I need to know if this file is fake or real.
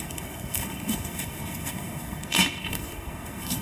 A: fake